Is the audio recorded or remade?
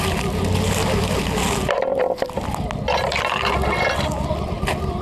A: recorded